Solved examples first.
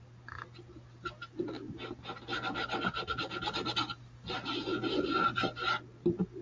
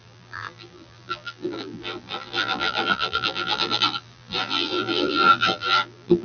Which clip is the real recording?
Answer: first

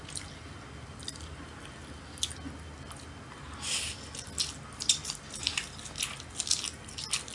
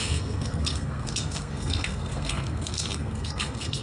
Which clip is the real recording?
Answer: first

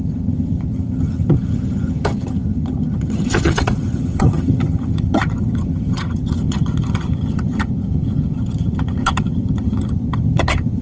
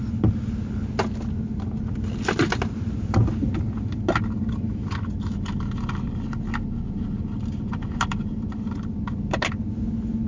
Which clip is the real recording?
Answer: second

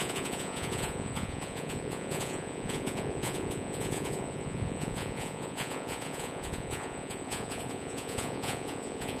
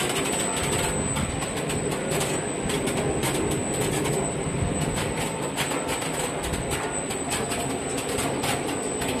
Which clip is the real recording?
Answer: second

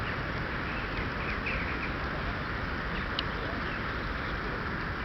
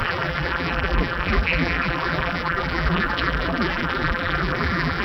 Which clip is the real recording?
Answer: first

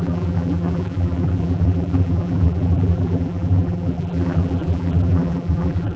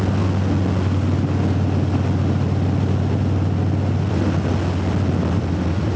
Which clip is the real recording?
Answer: second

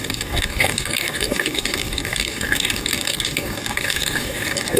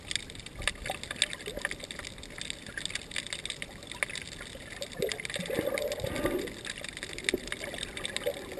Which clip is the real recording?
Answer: second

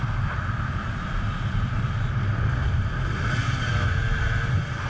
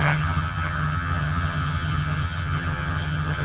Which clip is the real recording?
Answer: first